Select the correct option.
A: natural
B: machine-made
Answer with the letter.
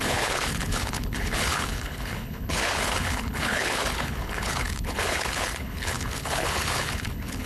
B